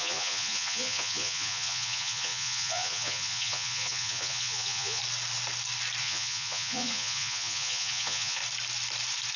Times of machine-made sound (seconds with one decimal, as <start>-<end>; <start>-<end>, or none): 0.0-5.0; 6.0-8.4